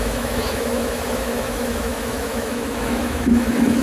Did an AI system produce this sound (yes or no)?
yes